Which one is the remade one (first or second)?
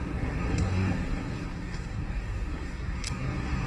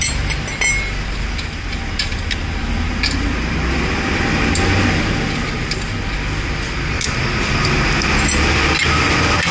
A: first